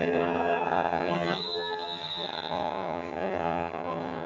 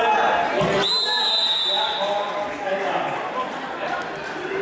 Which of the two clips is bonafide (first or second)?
second